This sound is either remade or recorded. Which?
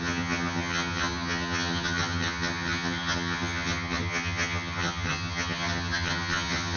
remade